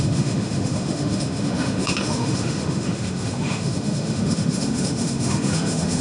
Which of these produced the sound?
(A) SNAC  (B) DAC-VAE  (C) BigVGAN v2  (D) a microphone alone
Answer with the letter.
B